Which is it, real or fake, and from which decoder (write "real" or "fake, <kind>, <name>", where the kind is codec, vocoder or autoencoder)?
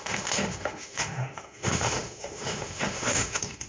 fake, autoencoder, DAC-VAE